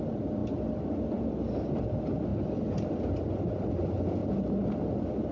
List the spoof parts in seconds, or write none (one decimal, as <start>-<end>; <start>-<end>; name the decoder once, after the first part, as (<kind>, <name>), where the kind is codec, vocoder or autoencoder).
none